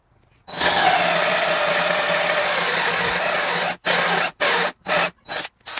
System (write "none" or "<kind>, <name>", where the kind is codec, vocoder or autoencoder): none